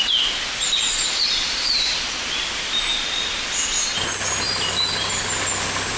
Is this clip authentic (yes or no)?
yes